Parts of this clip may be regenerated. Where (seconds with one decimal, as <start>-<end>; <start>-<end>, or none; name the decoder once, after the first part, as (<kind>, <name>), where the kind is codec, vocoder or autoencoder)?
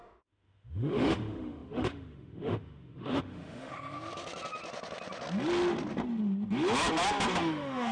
0.0-3.7 (autoencoder, DAC-VAE); 7.4-7.9